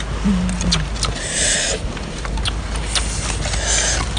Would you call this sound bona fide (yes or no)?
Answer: yes